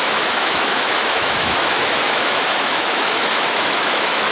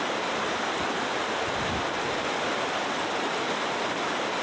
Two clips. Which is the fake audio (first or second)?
first